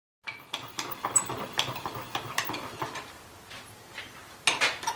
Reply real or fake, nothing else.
real